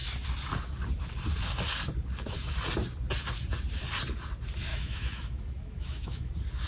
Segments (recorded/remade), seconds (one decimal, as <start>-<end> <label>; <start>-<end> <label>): 0.0-4.7 recorded; 4.7-6.3 remade; 6.3-6.7 recorded